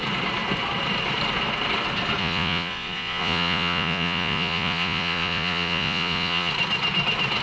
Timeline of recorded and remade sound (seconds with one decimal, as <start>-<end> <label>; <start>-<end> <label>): 0.0-2.2 recorded; 2.2-6.5 remade; 6.5-7.4 recorded